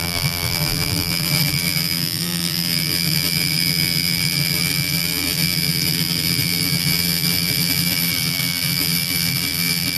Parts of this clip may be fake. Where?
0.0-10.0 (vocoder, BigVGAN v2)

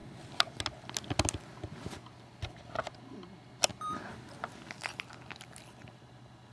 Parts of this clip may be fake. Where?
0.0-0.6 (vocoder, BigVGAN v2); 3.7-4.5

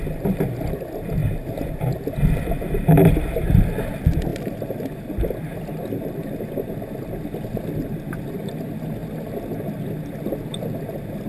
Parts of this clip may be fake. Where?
none

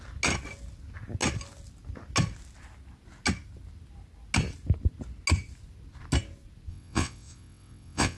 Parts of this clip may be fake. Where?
6.7-8.2 (vocoder, WaveNeXt)

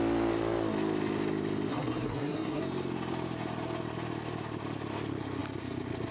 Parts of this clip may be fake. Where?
1.7-2.6 (codec, SNAC)

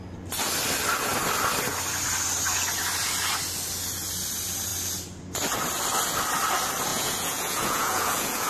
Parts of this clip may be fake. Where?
6.9-8.5 (vocoder, Vocos)